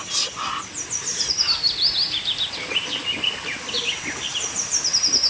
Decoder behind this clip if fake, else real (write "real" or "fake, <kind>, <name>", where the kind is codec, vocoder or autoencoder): real